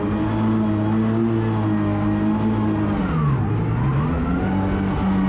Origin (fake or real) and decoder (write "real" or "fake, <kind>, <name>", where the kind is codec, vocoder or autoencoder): real